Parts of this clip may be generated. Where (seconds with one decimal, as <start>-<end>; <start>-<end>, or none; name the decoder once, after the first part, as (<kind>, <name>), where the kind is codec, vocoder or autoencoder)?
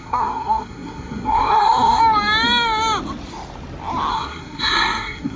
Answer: 0.0-2.0 (codec, SNAC); 4.1-5.4